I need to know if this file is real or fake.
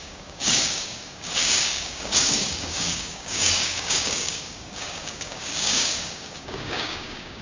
fake